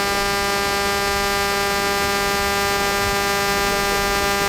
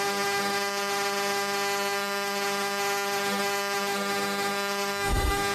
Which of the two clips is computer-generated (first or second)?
second